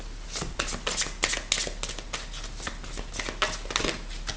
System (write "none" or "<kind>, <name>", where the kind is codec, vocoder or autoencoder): none